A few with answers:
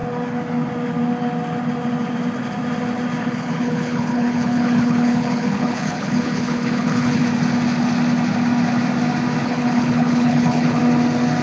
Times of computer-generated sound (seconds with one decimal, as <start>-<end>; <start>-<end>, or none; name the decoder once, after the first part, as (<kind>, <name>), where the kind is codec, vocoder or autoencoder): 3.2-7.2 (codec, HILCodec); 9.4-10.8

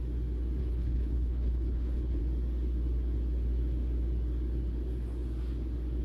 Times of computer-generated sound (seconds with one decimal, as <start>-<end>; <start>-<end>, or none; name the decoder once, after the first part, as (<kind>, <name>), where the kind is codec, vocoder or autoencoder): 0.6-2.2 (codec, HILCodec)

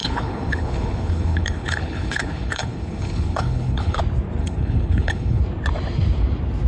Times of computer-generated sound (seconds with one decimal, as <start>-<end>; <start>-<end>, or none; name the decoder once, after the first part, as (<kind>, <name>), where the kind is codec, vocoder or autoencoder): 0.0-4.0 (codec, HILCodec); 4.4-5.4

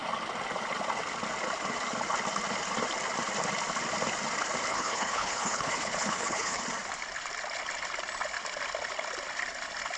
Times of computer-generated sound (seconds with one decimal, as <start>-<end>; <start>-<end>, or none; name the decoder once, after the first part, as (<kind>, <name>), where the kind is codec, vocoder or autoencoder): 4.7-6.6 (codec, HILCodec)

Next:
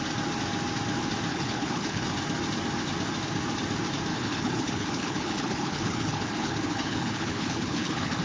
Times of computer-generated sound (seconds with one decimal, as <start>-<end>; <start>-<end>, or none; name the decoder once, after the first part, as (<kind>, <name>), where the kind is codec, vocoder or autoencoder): 1.3-2.1 (codec, HILCodec); 4.1-8.2

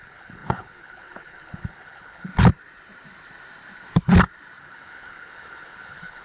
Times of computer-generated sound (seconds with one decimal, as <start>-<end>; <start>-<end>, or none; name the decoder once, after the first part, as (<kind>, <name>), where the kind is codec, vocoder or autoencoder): 0.0-2.3 (codec, HILCodec); 4.6-6.2

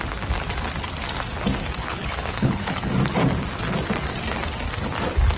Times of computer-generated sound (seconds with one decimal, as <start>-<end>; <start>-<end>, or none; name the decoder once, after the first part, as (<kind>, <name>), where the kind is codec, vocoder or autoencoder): 1.8-2.8 (codec, HILCodec)